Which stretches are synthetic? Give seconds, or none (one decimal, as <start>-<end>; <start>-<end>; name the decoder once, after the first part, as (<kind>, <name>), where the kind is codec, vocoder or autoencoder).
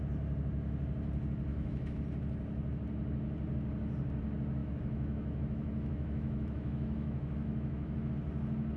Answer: 1.5-2.0 (autoencoder, DAC-VAE); 4.6-8.1